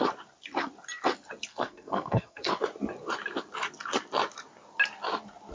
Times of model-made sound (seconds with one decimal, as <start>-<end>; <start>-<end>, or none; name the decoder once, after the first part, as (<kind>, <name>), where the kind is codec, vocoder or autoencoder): 1.5-2.5 (codec, SNAC)